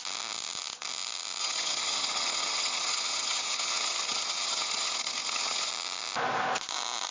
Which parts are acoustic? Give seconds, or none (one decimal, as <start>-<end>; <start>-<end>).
0.0-1.4; 5.7-7.1